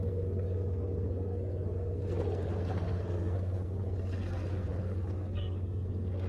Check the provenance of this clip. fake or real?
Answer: fake